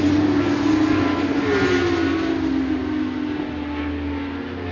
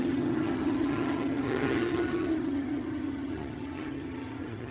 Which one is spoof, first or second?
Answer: second